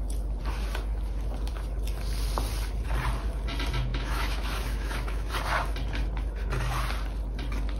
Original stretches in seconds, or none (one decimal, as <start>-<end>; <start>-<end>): 0.0-3.9; 5.3-7.8